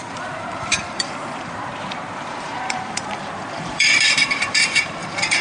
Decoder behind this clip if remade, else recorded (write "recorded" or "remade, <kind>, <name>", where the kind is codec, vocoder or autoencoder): remade, vocoder, BigVGAN v2